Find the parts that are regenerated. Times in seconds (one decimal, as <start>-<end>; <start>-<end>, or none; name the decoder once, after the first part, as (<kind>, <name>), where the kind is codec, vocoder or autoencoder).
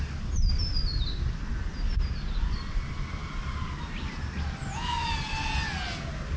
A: none